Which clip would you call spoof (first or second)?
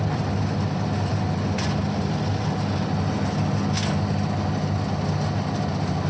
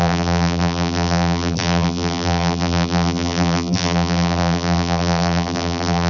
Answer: second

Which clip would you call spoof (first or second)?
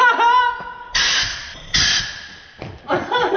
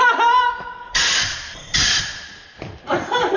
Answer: second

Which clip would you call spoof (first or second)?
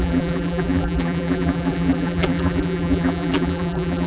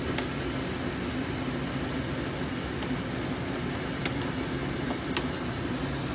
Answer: first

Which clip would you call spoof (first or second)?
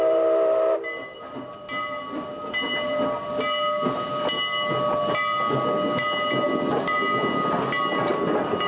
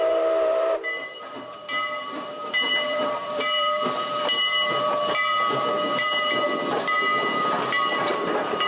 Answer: second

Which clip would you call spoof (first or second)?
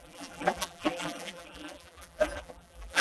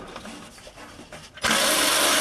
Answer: first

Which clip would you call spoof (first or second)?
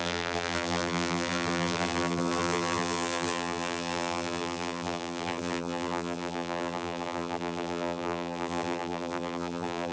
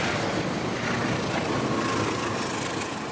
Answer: first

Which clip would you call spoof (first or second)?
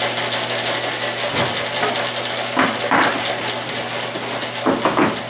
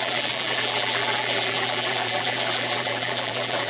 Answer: second